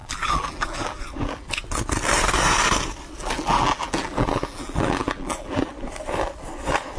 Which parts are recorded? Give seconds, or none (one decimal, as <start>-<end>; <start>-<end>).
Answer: 1.0-3.2; 5.7-7.0